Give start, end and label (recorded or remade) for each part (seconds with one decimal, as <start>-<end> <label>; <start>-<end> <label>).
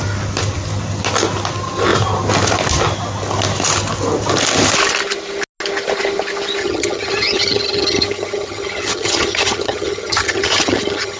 0.0-6.6 recorded; 6.6-11.2 remade